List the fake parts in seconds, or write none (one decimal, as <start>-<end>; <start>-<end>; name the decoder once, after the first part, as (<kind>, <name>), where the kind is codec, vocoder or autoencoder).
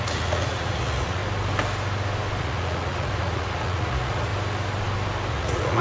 0.0-1.2 (vocoder, Vocos); 2.4-4.3; 5.3-5.8